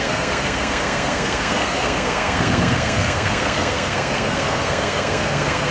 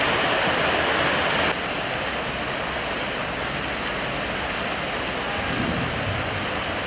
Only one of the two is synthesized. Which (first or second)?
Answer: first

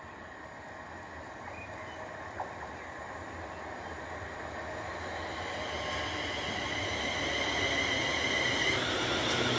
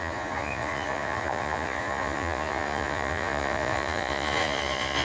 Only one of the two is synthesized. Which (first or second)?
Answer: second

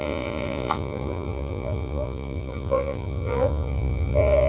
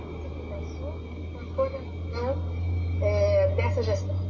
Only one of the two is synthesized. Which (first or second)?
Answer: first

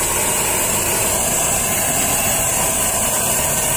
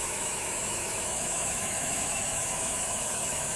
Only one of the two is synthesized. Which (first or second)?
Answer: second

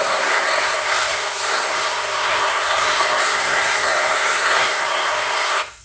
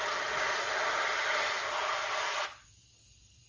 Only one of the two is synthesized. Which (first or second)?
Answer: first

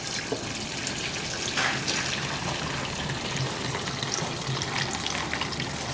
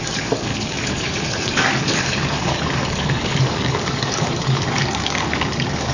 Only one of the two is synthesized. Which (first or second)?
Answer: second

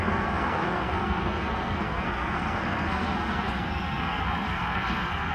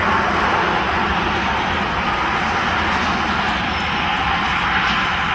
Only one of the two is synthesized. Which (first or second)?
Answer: first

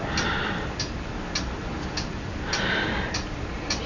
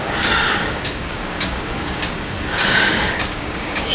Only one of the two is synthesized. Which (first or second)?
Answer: second